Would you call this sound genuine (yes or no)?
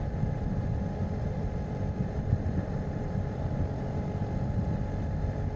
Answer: no